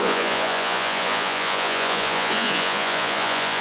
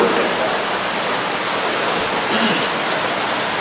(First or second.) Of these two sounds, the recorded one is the second